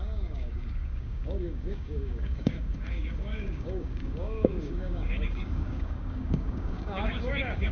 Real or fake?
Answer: fake